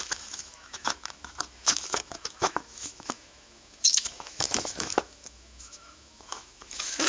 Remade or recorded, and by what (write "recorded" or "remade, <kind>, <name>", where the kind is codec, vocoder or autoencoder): remade, autoencoder, DAC-VAE